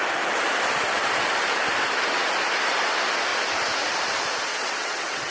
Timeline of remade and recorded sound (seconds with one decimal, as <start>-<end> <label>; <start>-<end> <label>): 0.0-4.5 recorded; 4.5-5.3 remade